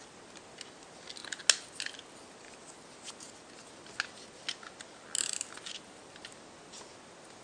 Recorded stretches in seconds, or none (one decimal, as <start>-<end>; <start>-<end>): 0.0-7.4